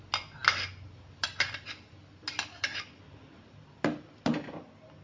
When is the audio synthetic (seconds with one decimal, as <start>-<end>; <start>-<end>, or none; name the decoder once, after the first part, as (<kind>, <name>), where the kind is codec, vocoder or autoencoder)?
none